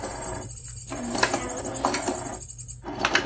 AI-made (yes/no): no